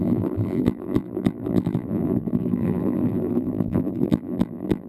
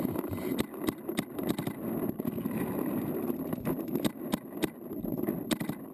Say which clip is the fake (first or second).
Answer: first